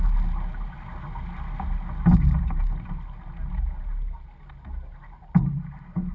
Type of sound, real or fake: real